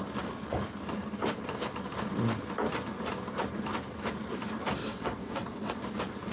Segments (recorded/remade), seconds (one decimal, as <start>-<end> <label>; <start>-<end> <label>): 0.0-4.8 recorded; 4.8-5.8 remade; 5.8-6.3 recorded